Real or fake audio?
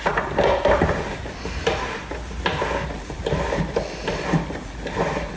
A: real